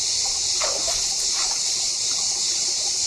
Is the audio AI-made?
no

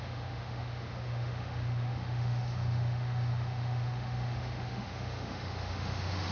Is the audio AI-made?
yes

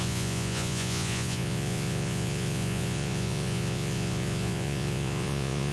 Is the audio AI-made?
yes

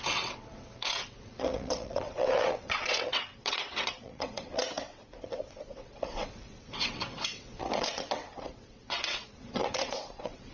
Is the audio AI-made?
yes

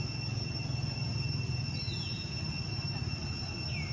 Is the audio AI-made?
no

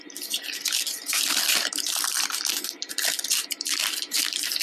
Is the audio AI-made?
no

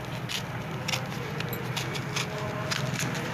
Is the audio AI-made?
no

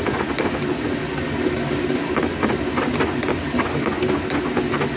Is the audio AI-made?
no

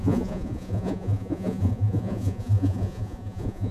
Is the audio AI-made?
yes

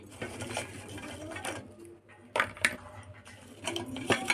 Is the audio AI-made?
no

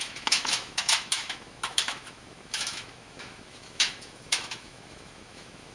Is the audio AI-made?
yes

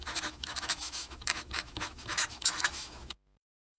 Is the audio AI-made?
yes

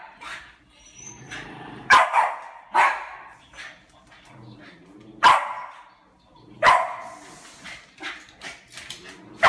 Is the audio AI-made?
no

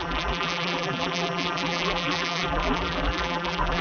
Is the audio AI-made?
yes